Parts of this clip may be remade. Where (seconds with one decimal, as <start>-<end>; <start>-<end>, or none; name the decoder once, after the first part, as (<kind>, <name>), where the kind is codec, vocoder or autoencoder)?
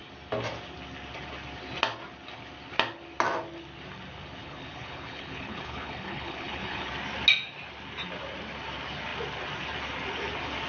4.4-6.9 (codec, HILCodec)